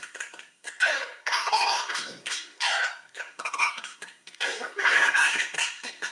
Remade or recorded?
remade